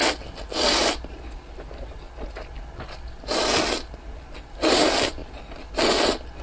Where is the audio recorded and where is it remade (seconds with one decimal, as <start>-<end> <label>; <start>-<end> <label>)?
0.0-6.4 recorded

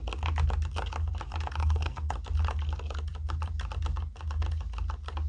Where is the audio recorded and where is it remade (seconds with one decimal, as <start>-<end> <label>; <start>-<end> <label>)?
0.0-1.6 recorded; 1.6-2.1 remade; 2.1-5.3 recorded

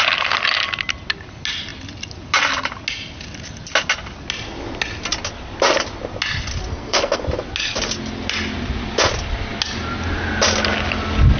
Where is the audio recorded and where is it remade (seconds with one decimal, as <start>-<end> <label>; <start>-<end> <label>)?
0.0-6.7 recorded; 6.7-7.2 remade; 7.2-11.4 recorded